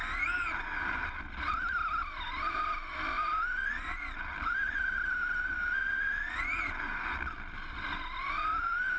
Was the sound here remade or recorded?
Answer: recorded